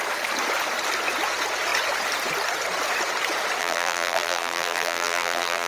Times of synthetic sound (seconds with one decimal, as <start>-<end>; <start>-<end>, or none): 3.6-5.7